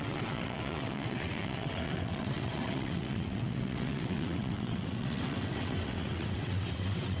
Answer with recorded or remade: remade